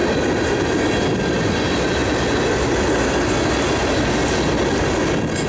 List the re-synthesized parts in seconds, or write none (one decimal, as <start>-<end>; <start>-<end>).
none